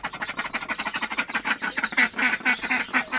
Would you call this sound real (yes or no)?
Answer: yes